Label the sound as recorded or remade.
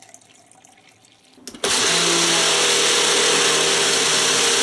recorded